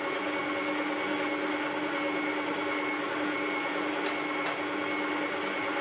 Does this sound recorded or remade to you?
recorded